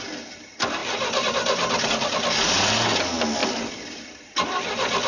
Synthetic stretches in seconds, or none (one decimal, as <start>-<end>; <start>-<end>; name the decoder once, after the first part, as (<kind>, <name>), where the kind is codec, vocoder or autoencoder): 0.8-1.3 (vocoder, BigVGAN v2); 3.4-5.1